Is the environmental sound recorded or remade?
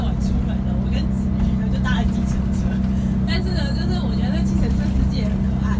recorded